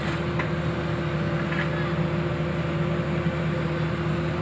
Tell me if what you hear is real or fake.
real